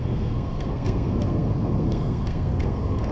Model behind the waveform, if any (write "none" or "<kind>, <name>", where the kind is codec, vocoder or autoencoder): codec, SNAC